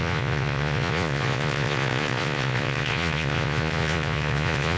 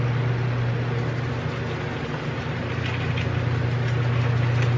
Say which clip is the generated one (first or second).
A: first